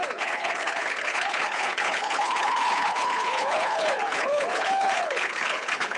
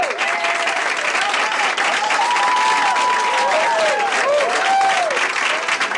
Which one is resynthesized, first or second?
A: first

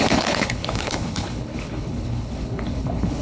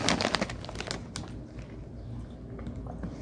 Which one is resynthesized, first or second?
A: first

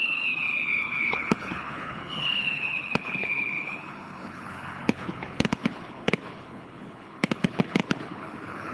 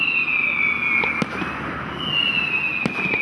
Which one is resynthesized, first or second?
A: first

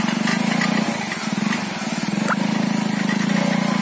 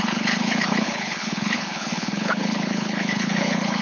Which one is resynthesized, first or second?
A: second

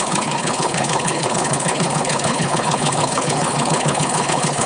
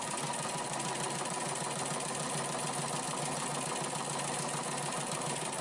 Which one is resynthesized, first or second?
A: first